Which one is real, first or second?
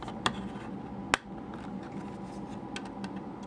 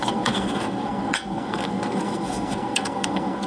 first